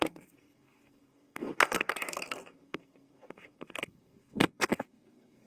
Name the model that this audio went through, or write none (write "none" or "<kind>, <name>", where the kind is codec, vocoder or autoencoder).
codec, SNAC